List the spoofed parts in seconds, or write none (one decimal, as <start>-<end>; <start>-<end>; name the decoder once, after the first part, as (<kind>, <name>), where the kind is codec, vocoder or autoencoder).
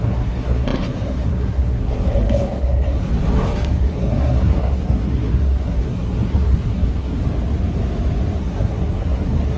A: 0.0-3.1 (codec, SNAC); 3.7-7.2; 8.4-9.6